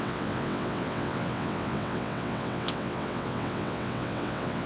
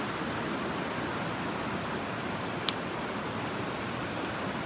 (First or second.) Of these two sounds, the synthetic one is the first